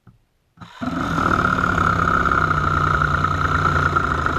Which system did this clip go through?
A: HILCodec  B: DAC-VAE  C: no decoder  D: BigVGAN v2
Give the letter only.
C